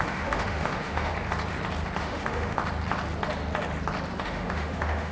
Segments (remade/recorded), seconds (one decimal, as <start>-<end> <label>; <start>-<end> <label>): 0.0-1.1 remade; 1.1-2.0 recorded; 2.0-2.6 remade; 2.6-4.2 recorded; 4.2-5.1 remade